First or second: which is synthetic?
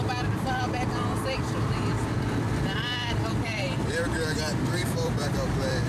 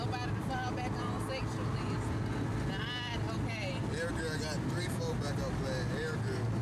first